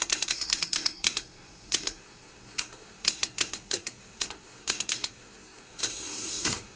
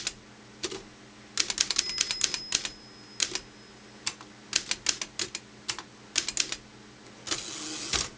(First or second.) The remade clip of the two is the first